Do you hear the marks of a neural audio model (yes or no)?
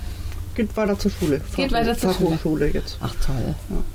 no